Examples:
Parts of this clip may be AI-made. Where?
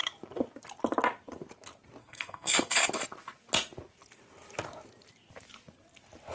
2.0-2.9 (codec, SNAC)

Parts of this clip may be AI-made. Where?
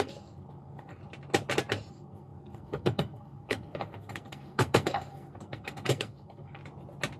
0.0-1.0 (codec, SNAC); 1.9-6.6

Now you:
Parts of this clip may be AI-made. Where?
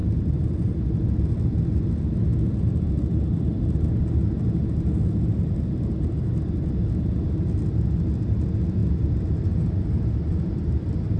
none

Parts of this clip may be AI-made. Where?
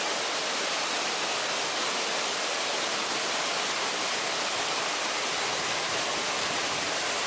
none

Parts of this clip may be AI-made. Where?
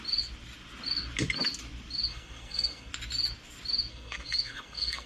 2.1-2.9 (codec, SNAC); 3.9-5.1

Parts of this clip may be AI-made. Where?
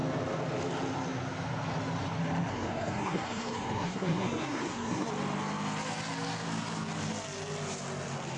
2.5-5.1 (codec, SNAC)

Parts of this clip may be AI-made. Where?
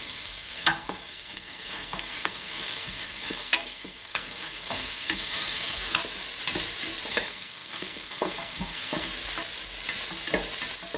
0.0-6.0 (codec, SNAC); 7.1-9.1